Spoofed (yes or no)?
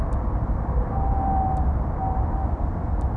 no